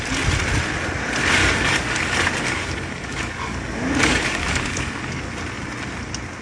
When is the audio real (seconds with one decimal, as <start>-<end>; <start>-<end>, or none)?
0.0-1.4; 5.2-6.4